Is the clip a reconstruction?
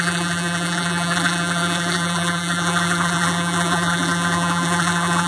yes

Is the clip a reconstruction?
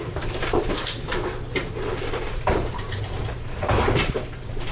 yes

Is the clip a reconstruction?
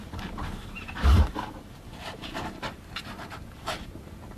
yes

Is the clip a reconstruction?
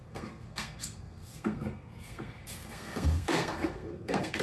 yes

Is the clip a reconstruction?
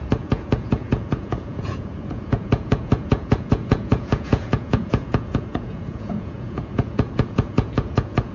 yes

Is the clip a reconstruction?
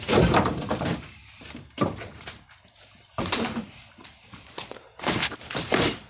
yes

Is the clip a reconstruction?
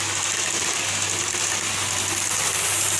no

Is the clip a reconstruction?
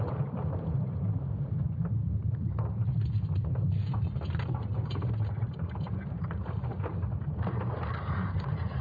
yes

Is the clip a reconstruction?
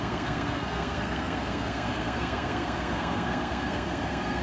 yes